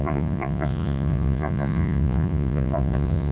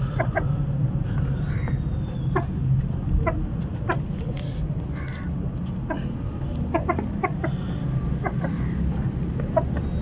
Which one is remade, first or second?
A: first